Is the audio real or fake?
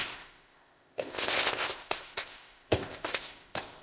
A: fake